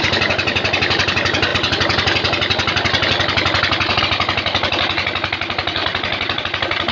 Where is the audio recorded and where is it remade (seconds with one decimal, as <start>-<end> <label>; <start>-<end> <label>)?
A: 0.0-5.8 recorded; 5.8-6.4 remade; 6.4-6.9 recorded